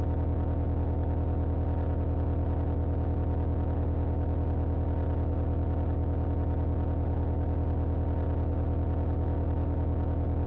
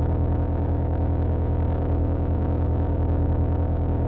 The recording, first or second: first